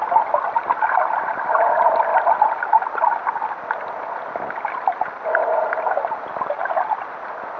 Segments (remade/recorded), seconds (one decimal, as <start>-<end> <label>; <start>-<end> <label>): 0.0-7.6 recorded